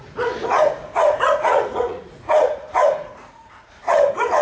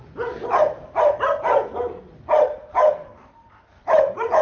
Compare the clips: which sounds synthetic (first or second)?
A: first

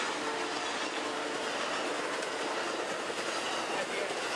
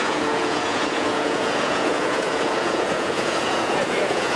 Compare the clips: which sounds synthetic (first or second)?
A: second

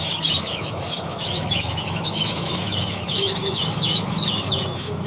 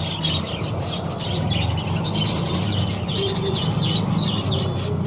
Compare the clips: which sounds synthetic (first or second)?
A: first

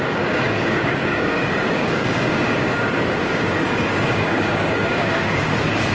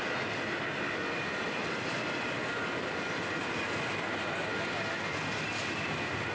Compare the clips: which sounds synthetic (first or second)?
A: first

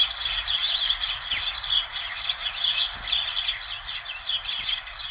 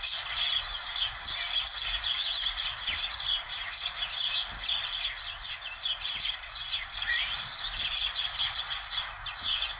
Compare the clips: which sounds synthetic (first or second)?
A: first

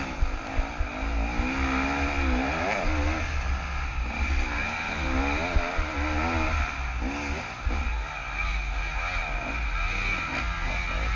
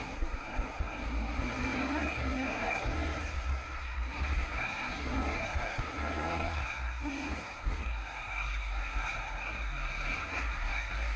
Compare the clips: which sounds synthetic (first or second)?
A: second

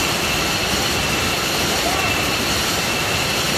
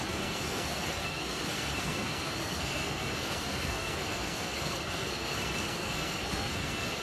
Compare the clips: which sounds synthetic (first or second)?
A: second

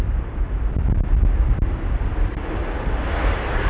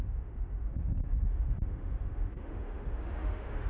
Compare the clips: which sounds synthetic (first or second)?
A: second